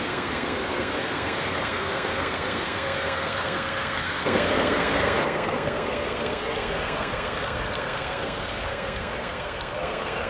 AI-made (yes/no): yes